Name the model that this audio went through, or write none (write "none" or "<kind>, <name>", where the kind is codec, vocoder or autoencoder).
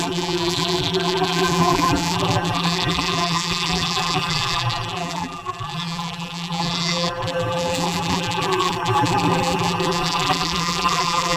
vocoder, BigVGAN v2